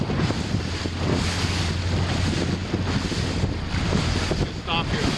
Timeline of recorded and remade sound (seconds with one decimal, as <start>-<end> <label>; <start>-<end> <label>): 0.0-5.2 recorded

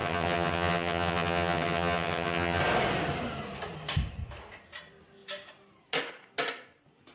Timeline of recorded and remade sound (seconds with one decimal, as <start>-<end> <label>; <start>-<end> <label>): 0.0-2.6 remade; 2.6-7.1 recorded